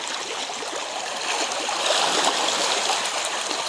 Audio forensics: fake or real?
real